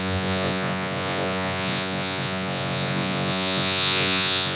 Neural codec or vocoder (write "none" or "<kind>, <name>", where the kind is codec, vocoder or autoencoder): vocoder, Vocos